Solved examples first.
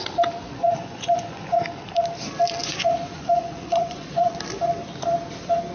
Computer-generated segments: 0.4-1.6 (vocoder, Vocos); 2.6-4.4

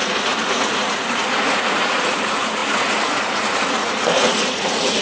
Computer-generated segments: 0.0-5.0 (vocoder, Vocos)